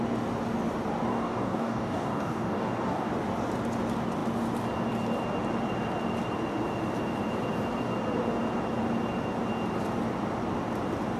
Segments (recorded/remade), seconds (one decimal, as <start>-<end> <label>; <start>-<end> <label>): 0.0-1.1 recorded; 1.1-3.1 remade; 3.1-11.2 recorded